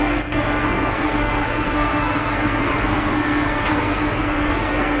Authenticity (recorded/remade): remade